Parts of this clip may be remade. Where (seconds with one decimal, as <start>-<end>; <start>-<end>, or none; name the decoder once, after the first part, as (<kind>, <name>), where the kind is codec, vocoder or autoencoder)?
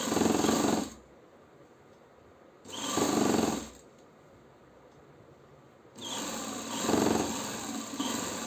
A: none